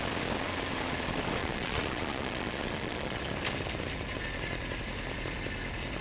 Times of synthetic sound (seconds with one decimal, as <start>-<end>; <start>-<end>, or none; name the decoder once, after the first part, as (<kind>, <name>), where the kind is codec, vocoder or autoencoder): 1.4-3.2 (vocoder, Vocos)